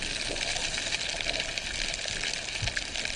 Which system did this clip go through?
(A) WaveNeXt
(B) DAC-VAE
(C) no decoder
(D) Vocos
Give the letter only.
C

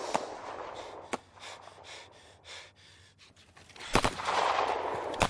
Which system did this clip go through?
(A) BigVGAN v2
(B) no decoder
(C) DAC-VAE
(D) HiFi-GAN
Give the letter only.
B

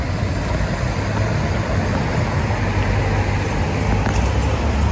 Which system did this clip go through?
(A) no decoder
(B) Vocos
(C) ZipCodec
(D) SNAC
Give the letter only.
A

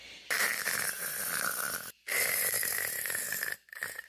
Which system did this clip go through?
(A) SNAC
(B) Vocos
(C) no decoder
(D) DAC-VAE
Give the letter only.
C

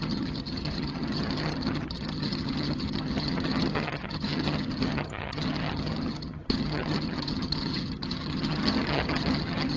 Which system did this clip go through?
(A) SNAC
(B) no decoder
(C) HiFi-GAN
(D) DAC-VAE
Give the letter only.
C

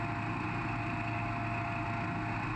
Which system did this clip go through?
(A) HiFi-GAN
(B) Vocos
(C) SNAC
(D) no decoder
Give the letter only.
D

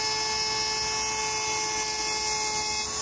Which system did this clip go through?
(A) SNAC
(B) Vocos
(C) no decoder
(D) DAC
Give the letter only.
C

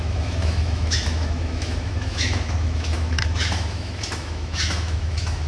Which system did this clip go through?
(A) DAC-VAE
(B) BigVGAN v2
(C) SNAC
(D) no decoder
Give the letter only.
A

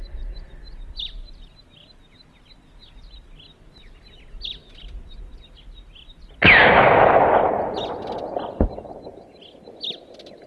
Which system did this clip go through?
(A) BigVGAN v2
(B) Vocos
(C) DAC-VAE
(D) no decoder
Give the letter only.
D